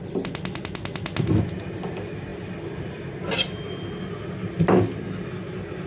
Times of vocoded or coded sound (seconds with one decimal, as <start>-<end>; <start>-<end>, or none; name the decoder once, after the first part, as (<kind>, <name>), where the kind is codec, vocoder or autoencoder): none